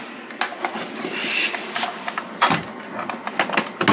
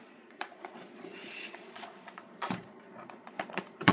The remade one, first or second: second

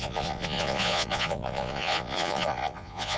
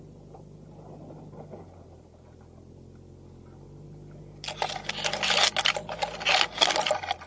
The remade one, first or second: first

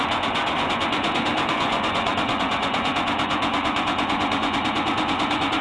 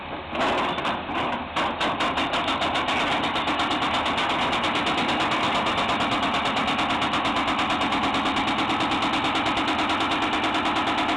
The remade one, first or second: first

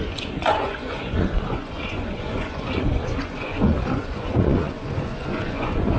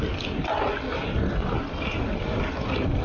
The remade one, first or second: first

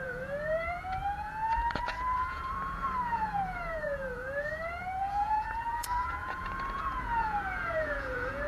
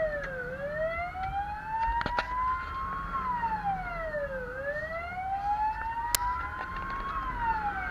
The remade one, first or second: first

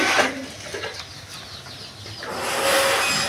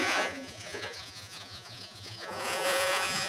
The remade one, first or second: second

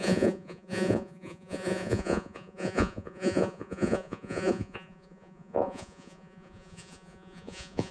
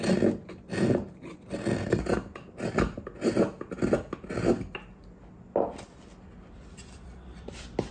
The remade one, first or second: first